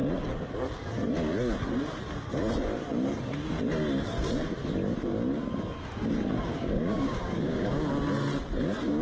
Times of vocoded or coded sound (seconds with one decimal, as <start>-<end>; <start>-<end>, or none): 6.5-7.9